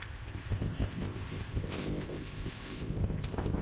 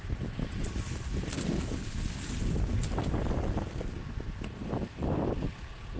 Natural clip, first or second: second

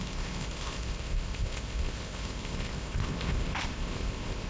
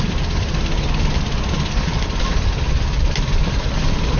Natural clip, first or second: second